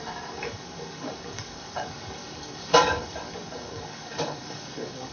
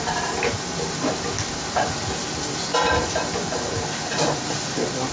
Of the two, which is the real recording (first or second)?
second